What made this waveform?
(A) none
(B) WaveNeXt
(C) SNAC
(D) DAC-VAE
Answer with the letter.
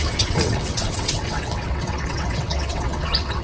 B